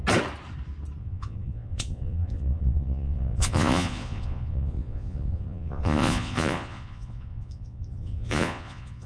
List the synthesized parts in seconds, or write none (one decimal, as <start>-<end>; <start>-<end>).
1.0-9.1